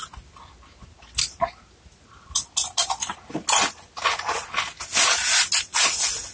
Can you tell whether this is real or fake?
real